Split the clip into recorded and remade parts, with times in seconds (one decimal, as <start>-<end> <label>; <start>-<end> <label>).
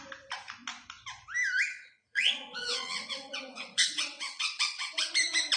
0.0-1.7 recorded; 1.7-5.1 remade; 5.1-5.6 recorded